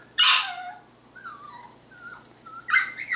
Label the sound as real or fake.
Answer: real